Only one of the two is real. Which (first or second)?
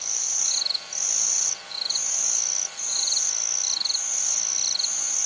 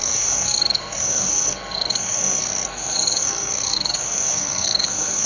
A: first